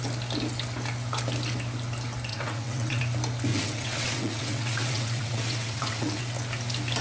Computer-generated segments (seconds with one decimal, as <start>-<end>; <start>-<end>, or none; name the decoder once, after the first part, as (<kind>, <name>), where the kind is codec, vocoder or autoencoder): 2.3-3.0 (vocoder, WaveNeXt); 3.5-6.2